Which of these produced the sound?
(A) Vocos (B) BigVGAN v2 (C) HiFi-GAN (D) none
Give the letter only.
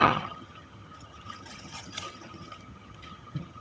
C